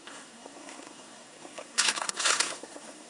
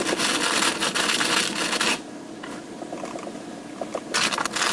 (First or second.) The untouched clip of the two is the second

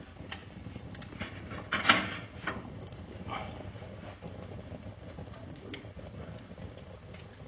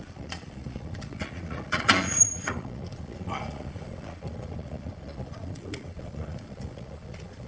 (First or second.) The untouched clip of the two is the first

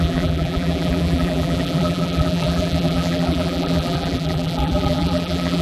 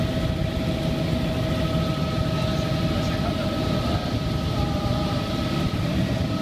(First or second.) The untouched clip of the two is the second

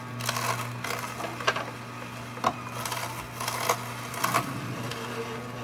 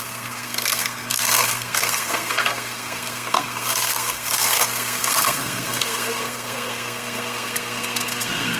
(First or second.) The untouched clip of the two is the first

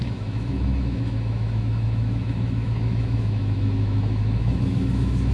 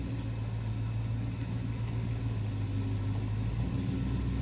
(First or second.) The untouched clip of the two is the second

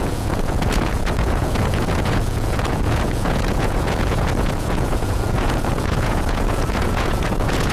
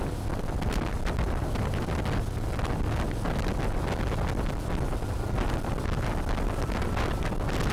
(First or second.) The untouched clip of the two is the second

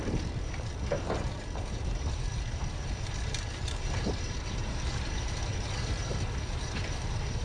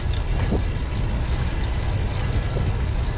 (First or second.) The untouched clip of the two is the second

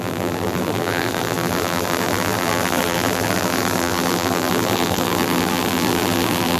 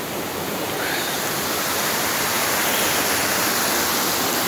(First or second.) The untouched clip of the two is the second